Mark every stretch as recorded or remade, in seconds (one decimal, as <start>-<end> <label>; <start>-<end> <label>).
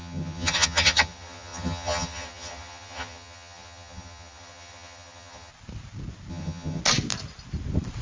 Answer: 0.0-5.5 remade; 5.5-6.3 recorded; 6.3-6.8 remade; 6.8-8.0 recorded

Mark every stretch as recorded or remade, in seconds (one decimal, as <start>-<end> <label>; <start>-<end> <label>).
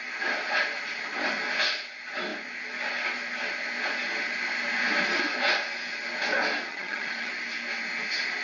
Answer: 0.0-6.7 recorded; 6.7-7.3 remade; 7.3-8.4 recorded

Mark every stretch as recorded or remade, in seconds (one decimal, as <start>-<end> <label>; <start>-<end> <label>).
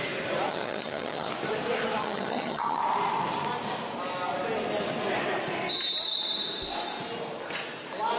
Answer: 0.0-0.5 recorded; 0.5-1.3 remade; 1.3-2.0 recorded; 2.0-2.8 remade; 2.8-8.2 recorded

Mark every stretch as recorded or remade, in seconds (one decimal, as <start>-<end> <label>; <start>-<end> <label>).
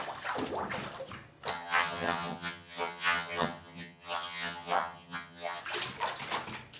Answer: 0.0-1.5 recorded; 1.5-5.6 remade; 5.6-6.8 recorded